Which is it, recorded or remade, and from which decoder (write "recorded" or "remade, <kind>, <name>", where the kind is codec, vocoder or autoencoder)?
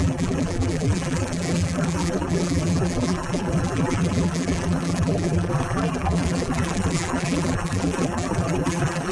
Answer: remade, vocoder, BigVGAN v2